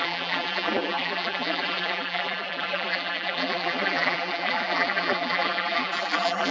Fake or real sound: fake